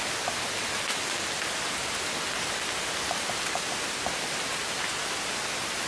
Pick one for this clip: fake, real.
real